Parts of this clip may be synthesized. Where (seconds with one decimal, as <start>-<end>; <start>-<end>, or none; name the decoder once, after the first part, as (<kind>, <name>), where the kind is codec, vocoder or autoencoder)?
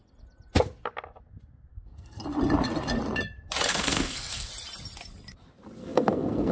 1.7-2.2 (codec, SNAC); 3.7-4.5; 5.8-6.5